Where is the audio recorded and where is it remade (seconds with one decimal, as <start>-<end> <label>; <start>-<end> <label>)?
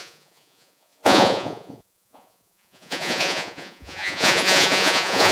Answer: 0.0-5.3 remade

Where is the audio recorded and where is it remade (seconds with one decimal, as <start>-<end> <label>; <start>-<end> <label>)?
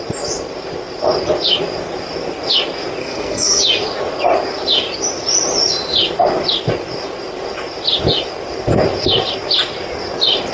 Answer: 0.0-3.0 recorded; 3.0-3.6 remade; 3.6-10.5 recorded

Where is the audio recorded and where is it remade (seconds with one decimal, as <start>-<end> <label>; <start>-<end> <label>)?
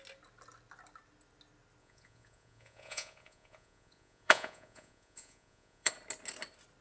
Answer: 0.0-1.8 recorded; 1.8-5.9 remade; 5.9-6.8 recorded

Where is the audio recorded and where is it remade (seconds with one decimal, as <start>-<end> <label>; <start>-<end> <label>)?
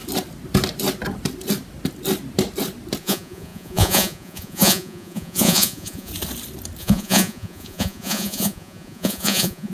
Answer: 0.0-3.0 recorded; 3.0-6.1 remade; 6.1-6.8 recorded; 6.8-9.7 remade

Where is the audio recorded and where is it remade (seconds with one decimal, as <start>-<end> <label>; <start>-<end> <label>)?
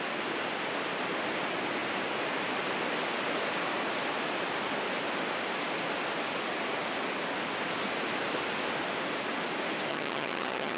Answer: 0.0-9.9 recorded; 9.9-10.8 remade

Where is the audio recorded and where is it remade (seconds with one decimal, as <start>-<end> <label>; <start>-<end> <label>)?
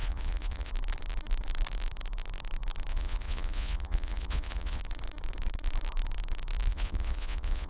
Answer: 0.0-0.7 remade; 0.7-2.9 recorded; 2.9-4.8 remade; 4.8-6.7 recorded; 6.7-7.7 remade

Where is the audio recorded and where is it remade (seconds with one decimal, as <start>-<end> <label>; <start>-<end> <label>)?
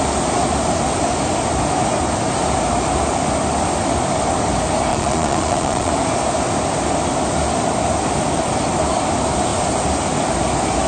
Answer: 0.0-4.9 recorded; 4.9-5.9 remade; 5.9-10.9 recorded